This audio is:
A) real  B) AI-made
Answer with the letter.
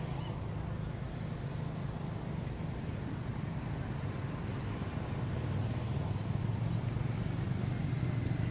A